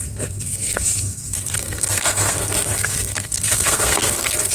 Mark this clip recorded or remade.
remade